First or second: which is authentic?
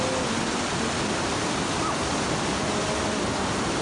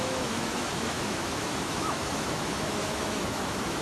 first